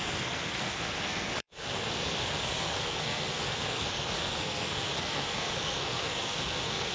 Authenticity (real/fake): fake